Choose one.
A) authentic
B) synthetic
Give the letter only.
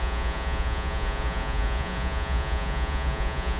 B